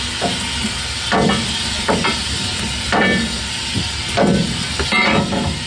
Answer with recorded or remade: recorded